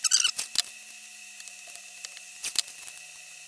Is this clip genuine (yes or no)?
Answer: yes